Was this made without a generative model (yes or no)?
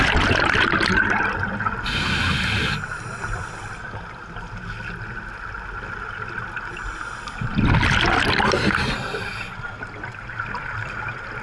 yes